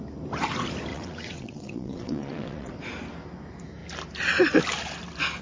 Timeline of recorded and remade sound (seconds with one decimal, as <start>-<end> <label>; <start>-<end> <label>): 0.0-0.9 recorded; 0.9-2.7 remade; 2.7-5.4 recorded